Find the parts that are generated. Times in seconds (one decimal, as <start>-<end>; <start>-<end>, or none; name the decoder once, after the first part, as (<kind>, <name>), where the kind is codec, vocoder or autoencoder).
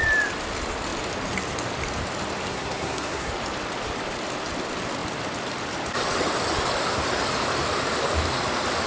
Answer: 2.5-3.3 (codec, SNAC)